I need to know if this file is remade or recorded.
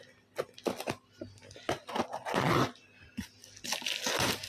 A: recorded